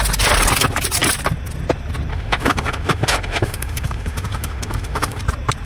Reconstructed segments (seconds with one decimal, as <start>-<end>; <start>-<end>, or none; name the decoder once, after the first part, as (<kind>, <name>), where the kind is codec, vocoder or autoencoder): 2.1-5.2 (autoencoder, DAC-VAE)